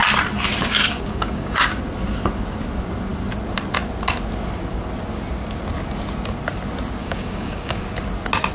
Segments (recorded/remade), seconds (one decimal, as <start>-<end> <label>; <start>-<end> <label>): 0.0-0.6 recorded; 0.6-1.8 remade; 1.8-7.0 recorded; 7.0-7.8 remade; 7.8-8.5 recorded